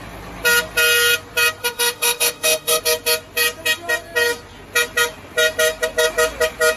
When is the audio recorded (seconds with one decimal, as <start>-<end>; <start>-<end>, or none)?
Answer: 0.0-1.6; 2.8-6.8

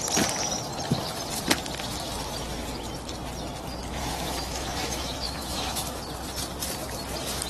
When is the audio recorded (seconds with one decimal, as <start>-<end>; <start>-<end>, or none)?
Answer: 0.0-4.0; 6.0-7.5